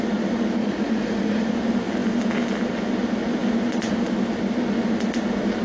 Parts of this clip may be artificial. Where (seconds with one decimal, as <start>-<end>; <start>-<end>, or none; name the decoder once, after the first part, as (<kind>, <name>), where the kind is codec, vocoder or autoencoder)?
0.6-1.5 (vocoder, Vocos)

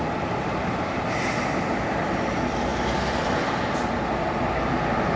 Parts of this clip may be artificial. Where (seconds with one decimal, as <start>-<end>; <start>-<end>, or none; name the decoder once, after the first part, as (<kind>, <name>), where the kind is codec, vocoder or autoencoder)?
none

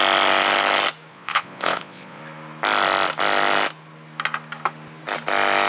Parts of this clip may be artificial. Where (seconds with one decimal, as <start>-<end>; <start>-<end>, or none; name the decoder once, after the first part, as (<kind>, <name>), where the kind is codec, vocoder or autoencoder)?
1.1-2.2 (vocoder, Vocos)

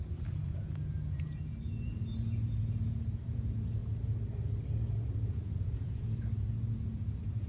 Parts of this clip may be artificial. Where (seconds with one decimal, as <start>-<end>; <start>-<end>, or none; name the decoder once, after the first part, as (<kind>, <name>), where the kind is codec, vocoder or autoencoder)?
0.0-3.8 (vocoder, Vocos); 4.9-7.5

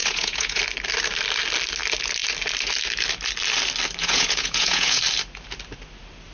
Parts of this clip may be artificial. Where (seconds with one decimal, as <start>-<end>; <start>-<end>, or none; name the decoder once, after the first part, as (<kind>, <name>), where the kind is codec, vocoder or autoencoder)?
0.0-0.6 (vocoder, Vocos); 4.0-5.0

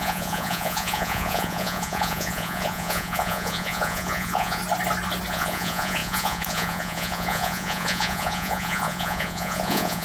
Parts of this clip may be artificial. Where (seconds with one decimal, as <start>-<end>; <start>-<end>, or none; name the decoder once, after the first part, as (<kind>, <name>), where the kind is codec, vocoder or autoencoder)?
0.0-4.6 (vocoder, Vocos); 5.3-10.0

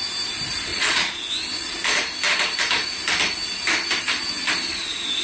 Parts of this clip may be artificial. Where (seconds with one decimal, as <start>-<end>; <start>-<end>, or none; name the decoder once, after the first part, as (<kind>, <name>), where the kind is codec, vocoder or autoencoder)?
0.7-1.3 (vocoder, Vocos)

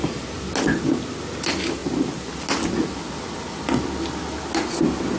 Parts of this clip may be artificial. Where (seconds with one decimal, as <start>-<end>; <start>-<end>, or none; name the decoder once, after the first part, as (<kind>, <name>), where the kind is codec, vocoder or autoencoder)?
none